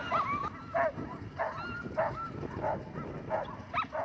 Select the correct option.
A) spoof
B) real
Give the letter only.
B